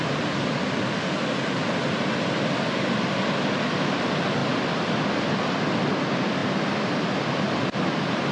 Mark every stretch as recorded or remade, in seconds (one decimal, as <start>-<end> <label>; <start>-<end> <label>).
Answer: 0.0-8.3 recorded